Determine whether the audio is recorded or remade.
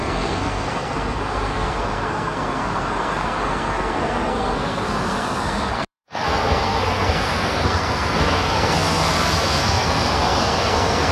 remade